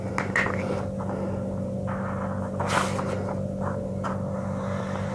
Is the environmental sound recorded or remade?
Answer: recorded